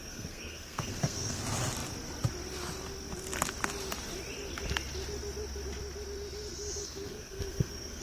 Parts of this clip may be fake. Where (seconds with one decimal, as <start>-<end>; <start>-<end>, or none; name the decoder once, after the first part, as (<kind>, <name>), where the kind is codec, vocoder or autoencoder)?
0.0-1.4 (codec, SNAC); 6.8-8.0